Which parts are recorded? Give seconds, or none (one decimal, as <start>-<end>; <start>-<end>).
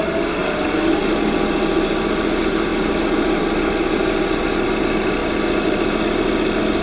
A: 0.0-6.8